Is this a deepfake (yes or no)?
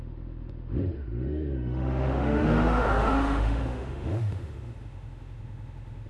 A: yes